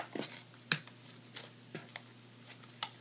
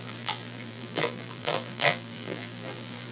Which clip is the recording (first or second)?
first